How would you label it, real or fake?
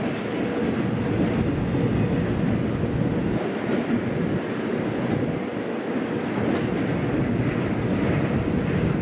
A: real